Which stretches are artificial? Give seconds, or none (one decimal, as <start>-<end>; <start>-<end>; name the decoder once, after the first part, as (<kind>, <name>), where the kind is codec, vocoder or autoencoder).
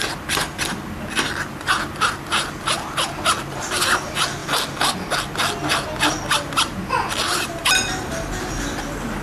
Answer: none